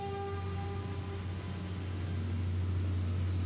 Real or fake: real